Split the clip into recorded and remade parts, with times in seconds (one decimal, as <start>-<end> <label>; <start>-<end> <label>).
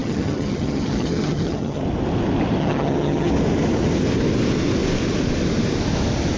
0.0-1.8 remade; 1.8-2.6 recorded; 2.6-3.3 remade; 3.3-6.4 recorded